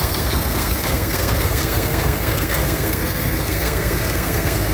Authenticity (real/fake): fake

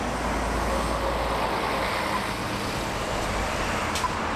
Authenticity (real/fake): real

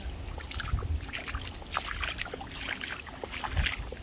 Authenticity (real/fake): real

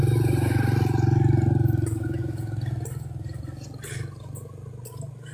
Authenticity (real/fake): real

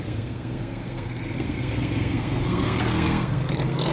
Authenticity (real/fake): fake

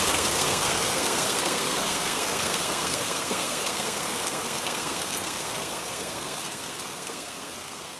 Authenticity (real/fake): fake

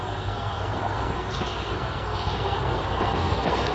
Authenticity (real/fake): fake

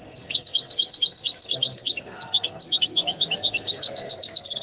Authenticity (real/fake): fake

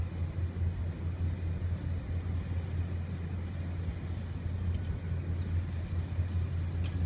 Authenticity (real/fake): real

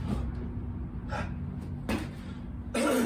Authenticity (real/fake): real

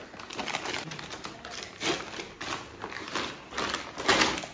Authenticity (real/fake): real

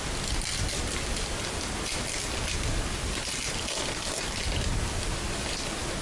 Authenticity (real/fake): real